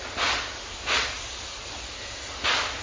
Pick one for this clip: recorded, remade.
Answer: recorded